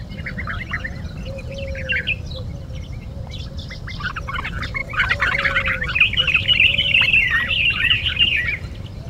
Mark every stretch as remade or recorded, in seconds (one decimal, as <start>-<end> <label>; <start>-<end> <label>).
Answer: 0.0-9.1 remade